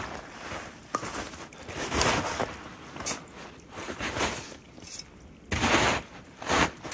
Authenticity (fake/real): real